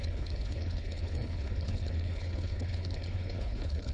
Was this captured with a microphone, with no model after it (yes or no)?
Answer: no